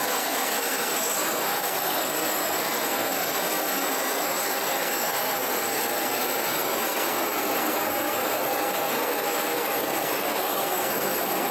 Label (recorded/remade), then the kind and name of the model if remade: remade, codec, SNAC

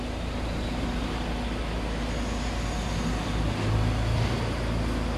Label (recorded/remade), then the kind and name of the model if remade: recorded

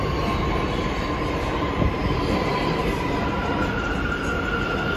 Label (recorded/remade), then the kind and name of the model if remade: recorded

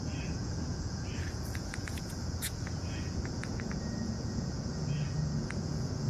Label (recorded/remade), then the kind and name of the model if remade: remade, vocoder, Vocos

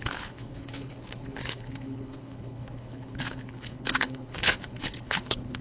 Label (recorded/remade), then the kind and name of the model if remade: remade, codec, HILCodec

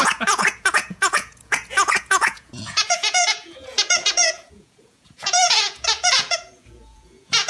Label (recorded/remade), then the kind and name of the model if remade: remade, vocoder, Vocos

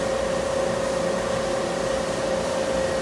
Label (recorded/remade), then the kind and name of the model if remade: recorded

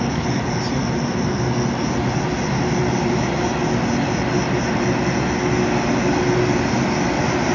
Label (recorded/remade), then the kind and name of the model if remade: recorded